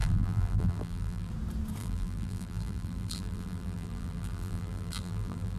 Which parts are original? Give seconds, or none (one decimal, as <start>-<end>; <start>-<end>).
1.3-1.8